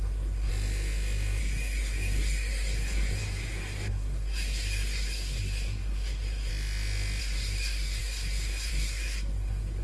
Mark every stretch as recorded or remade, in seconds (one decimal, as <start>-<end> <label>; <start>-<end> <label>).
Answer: 0.0-0.5 remade; 0.5-1.4 recorded; 1.4-6.5 remade; 6.5-7.2 recorded; 7.2-9.8 remade